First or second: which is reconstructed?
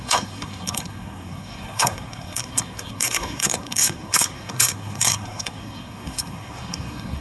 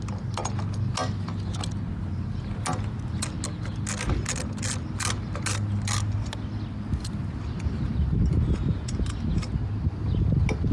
first